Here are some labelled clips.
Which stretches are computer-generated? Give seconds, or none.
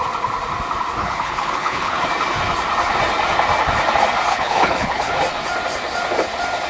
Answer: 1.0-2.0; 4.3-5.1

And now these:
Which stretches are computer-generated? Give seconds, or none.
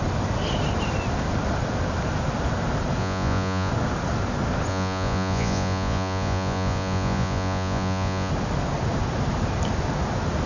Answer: 3.0-3.7; 4.7-8.3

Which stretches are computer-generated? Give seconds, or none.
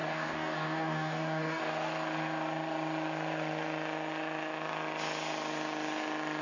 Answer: 0.0-1.6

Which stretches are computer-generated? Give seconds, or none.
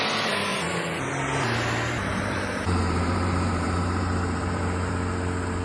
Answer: 0.5-1.1; 2.1-4.9